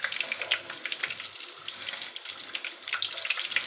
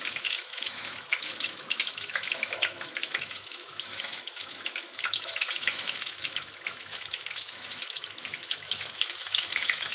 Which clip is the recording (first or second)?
first